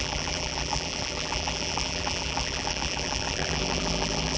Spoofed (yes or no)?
yes